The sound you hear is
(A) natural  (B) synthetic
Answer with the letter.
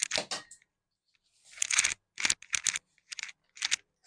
A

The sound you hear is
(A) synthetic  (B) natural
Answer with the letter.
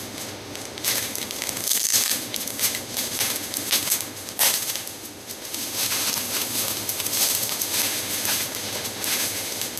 A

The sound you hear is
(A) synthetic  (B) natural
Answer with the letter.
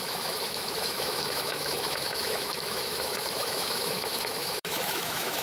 A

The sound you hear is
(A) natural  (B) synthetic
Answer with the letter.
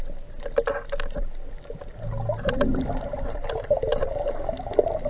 A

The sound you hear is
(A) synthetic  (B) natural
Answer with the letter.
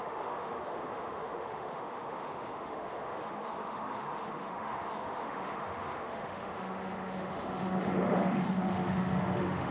A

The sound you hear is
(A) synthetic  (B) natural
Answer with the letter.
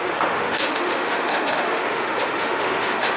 A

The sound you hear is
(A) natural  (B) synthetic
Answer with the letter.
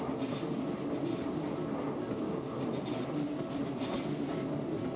A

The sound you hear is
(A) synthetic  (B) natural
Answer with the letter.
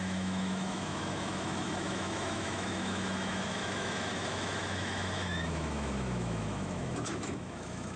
A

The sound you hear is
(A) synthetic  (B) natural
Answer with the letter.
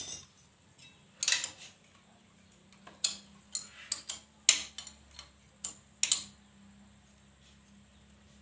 B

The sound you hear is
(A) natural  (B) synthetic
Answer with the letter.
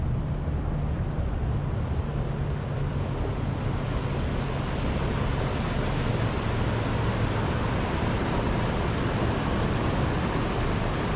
A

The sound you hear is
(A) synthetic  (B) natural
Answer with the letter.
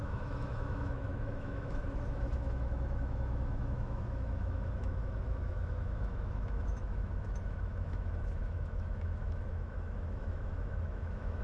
A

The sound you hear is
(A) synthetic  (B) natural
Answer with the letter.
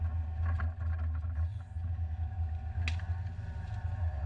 B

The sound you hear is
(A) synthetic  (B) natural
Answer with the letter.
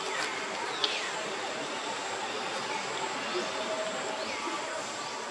B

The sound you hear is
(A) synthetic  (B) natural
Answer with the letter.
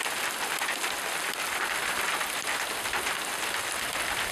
B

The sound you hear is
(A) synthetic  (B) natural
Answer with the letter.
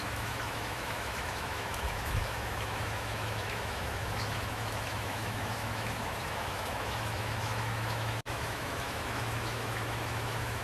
A